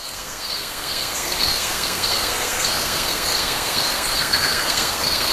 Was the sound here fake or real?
fake